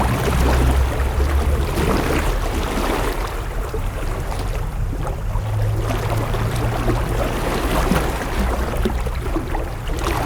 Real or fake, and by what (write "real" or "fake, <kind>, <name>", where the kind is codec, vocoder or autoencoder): real